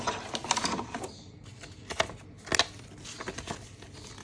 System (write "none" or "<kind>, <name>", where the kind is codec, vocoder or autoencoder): none